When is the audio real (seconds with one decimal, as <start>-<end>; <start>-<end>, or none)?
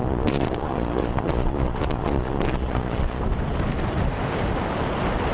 3.2-5.3